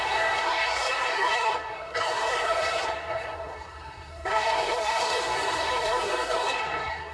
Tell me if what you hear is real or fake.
fake